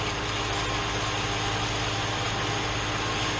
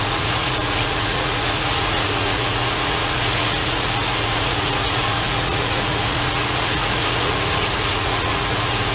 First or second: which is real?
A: first